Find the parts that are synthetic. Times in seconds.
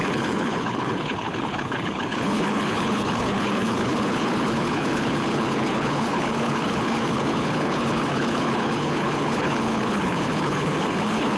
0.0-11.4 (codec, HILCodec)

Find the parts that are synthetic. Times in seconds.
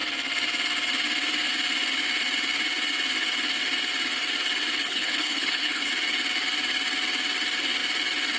4.8-5.9 (codec, HILCodec)